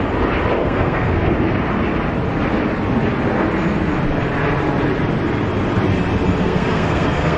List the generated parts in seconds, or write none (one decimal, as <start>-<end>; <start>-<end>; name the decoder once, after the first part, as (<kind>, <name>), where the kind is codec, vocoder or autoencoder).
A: 0.6-1.3 (codec, SNAC); 6.4-7.4